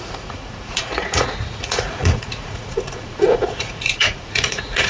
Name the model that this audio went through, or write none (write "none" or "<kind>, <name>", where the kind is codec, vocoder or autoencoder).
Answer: vocoder, Vocos